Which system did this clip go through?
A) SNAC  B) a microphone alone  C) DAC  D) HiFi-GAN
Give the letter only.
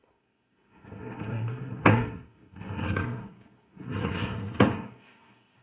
A